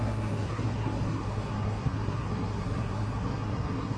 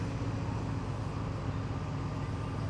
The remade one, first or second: first